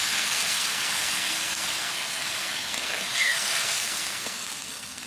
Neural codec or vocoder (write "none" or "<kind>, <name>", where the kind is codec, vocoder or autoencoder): codec, SNAC